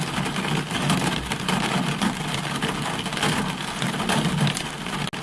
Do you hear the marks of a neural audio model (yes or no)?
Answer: no